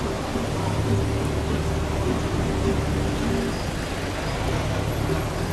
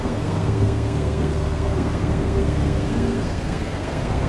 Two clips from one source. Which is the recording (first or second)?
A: first